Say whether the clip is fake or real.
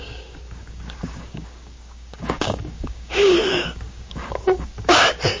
fake